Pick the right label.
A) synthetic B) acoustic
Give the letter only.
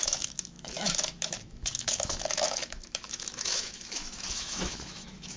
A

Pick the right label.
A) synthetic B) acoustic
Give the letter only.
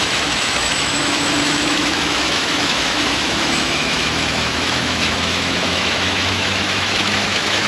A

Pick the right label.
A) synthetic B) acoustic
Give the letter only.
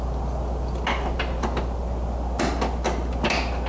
B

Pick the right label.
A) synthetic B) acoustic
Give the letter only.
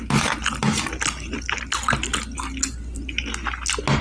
B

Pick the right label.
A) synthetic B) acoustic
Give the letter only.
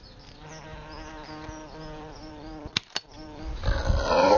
B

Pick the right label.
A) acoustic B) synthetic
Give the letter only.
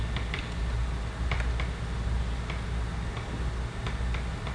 A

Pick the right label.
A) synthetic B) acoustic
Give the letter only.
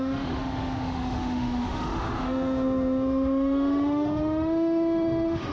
A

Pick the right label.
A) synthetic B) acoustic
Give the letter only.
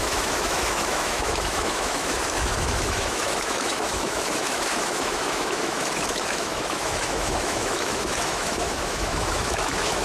A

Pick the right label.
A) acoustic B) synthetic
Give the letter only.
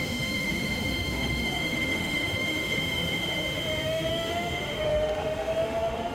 B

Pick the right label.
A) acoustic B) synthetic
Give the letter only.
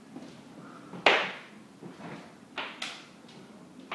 A